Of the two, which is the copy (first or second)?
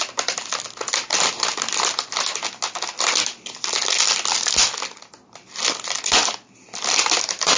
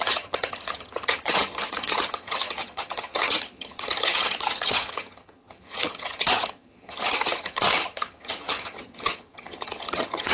second